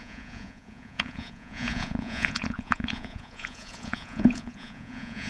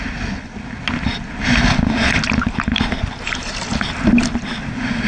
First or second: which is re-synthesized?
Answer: first